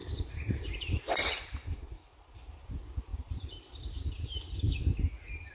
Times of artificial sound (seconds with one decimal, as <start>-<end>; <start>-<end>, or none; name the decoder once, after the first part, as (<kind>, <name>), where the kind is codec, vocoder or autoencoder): 0.0-2.7 (vocoder, BigVGAN v2); 3.1-4.8

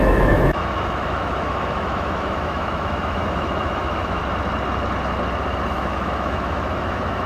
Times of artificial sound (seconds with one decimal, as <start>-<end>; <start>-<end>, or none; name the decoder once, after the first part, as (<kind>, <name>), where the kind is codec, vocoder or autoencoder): 0.0-4.2 (autoencoder, DAC-VAE); 5.7-7.3

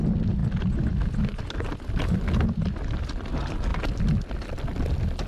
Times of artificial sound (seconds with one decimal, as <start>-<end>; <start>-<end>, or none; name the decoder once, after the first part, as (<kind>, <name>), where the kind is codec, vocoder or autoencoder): none